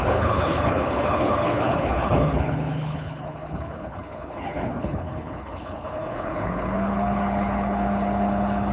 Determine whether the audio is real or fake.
fake